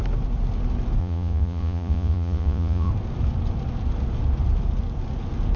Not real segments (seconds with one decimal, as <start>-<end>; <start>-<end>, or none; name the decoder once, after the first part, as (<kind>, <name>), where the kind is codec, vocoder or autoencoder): 1.0-2.9 (vocoder, Vocos)